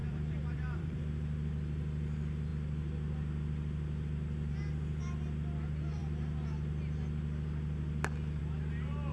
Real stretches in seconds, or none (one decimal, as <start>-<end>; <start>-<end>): 1.0-9.1